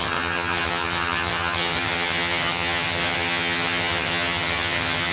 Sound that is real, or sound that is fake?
fake